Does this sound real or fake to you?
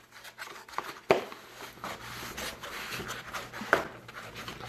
real